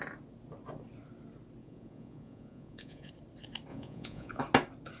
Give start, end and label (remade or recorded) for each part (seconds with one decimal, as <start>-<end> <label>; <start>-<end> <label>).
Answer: 0.0-1.6 recorded; 1.6-3.1 remade; 3.1-3.7 recorded; 3.7-4.4 remade; 4.4-5.0 recorded

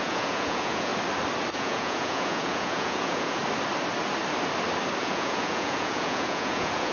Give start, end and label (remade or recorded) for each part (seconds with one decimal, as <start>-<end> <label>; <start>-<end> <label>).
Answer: 0.0-0.9 remade; 0.9-1.5 recorded; 1.5-3.4 remade; 3.4-5.0 recorded; 5.0-6.9 remade

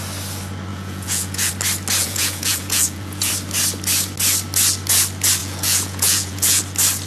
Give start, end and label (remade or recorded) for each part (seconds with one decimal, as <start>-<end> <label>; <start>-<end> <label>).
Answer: 0.0-0.7 recorded; 0.7-1.5 remade; 1.5-2.0 recorded; 2.0-3.3 remade; 3.3-5.4 recorded; 5.4-6.6 remade; 6.6-7.1 recorded

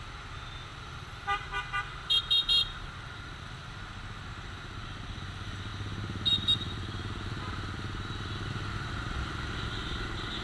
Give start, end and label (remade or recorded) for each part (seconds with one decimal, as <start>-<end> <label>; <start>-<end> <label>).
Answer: 0.0-10.4 recorded